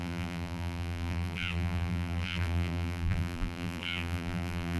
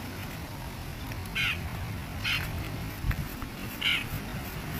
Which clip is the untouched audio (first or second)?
second